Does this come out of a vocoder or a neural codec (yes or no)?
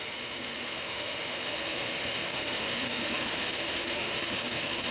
yes